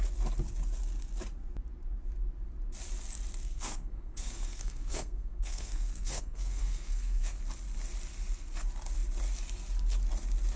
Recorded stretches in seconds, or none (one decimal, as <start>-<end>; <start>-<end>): 0.0-3.4; 7.4-10.6